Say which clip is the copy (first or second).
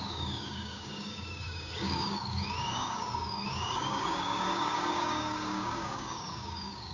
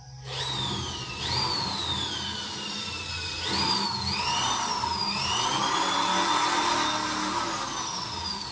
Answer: first